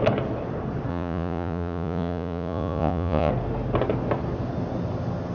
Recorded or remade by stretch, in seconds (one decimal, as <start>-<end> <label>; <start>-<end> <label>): 0.0-0.9 recorded; 0.9-3.3 remade; 3.3-5.3 recorded